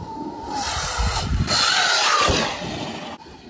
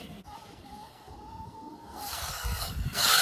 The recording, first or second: first